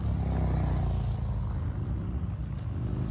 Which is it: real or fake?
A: real